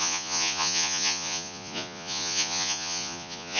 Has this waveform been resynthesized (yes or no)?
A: yes